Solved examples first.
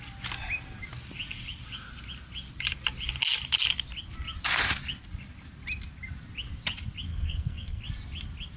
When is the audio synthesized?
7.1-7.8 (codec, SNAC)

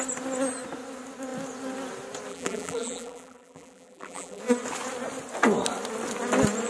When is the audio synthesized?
2.3-4.4 (vocoder, BigVGAN v2)

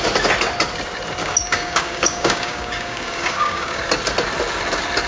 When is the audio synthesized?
1.2-3.8 (codec, DAC)

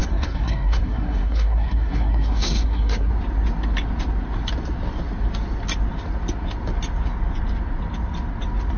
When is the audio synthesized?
0.0-3.1 (codec, SNAC)